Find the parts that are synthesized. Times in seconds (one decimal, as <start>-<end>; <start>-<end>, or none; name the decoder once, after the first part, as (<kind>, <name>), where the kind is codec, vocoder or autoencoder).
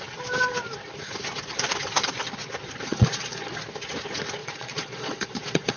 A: 2.9-3.5 (vocoder, Vocos); 4.4-5.8